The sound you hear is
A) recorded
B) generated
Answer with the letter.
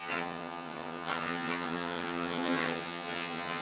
B